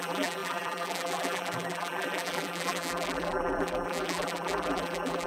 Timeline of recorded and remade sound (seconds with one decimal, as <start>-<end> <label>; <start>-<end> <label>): 0.0-5.3 remade